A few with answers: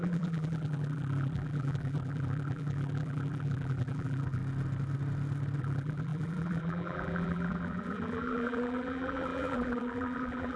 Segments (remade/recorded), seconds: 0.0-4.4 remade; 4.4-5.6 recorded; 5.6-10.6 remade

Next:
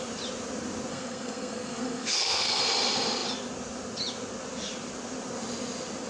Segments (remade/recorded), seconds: 0.0-0.9 recorded; 0.9-2.6 remade; 2.6-6.1 recorded

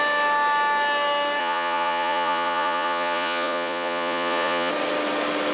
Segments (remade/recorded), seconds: 0.0-1.4 recorded; 1.4-4.7 remade; 4.7-5.5 recorded

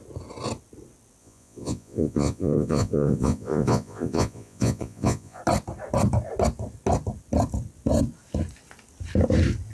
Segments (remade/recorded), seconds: 0.0-1.2 recorded; 1.2-5.4 remade; 5.4-9.7 recorded

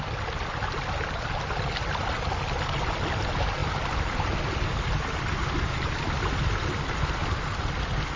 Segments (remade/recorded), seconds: 0.0-8.2 recorded

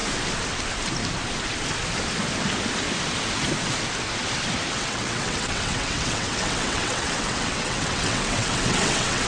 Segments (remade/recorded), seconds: 0.0-4.7 recorded; 4.7-9.3 remade

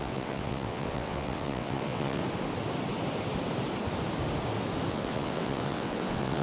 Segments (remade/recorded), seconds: 0.0-2.2 remade; 2.2-4.9 recorded; 4.9-6.4 remade